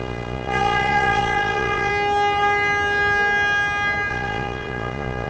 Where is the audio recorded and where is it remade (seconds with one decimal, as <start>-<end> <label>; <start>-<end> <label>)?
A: 0.0-1.9 remade; 1.9-4.1 recorded; 4.1-5.3 remade